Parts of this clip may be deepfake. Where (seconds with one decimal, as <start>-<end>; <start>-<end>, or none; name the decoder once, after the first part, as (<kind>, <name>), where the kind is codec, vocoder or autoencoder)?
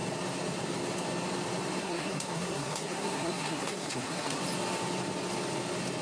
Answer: 1.8-4.4 (codec, SNAC)